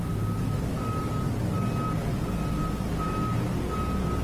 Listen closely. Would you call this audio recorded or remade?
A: recorded